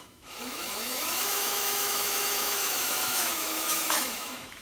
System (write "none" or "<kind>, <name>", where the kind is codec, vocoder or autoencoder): autoencoder, DAC-VAE